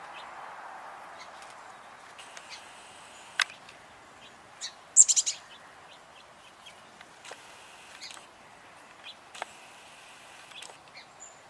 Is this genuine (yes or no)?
yes